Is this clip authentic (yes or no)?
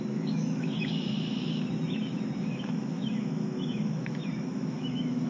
no